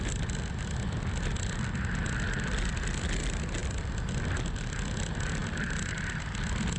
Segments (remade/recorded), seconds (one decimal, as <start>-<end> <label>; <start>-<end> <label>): 0.0-6.8 recorded